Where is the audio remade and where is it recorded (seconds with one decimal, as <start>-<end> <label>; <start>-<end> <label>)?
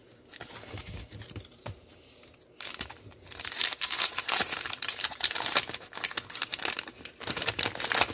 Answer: 0.0-1.1 recorded; 1.1-5.9 remade; 5.9-8.1 recorded